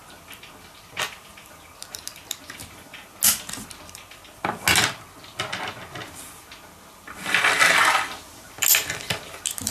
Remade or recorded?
recorded